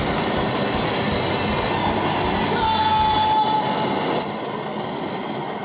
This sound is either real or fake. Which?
real